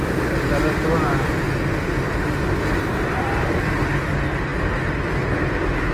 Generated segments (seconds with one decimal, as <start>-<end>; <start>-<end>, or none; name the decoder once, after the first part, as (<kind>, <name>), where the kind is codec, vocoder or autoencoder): 0.0-4.5 (vocoder, BigVGAN v2); 5.5-5.9